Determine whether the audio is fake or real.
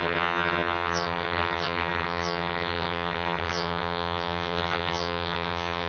fake